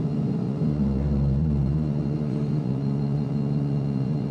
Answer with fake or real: fake